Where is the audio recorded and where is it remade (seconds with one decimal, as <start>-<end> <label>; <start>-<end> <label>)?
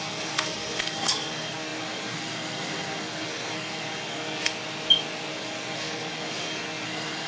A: 0.0-4.5 remade; 4.5-5.3 recorded; 5.3-7.3 remade